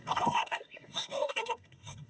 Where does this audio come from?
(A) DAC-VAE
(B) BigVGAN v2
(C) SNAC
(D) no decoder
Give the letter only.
C